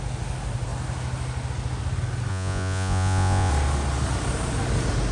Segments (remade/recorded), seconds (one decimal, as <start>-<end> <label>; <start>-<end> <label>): 0.0-2.3 recorded; 2.3-3.5 remade; 3.5-5.1 recorded